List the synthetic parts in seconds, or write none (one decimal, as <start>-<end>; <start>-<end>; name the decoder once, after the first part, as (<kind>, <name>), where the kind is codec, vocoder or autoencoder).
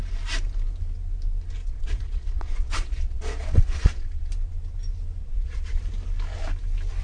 1.6-4.3 (vocoder, Vocos); 5.2-5.8